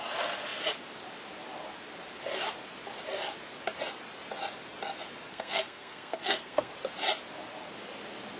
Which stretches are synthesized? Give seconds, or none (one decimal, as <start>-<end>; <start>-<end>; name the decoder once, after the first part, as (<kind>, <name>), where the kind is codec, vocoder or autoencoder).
5.3-6.7 (codec, SNAC)